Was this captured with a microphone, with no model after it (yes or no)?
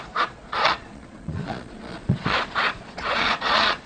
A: no